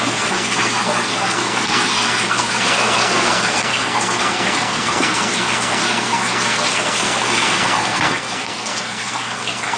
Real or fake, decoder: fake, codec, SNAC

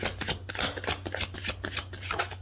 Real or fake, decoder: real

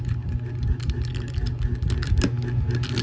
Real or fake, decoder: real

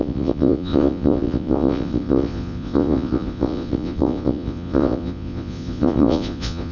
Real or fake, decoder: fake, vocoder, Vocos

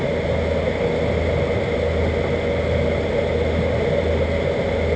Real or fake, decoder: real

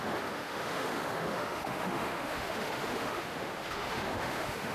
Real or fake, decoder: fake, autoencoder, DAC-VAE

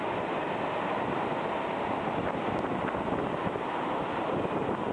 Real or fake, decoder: real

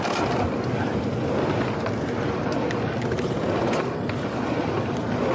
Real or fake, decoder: real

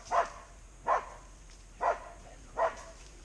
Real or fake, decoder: real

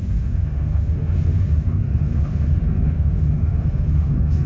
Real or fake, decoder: fake, autoencoder, DAC-VAE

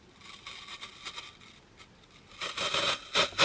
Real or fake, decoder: real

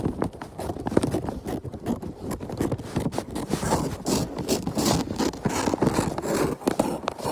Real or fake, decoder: real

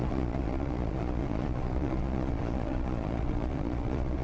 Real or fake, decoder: fake, vocoder, Vocos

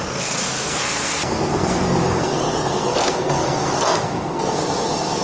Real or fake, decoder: fake, codec, SNAC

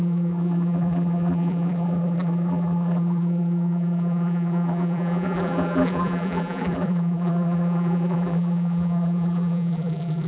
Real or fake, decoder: fake, vocoder, BigVGAN v2